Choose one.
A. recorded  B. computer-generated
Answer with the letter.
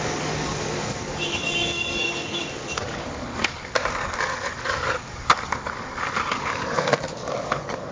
B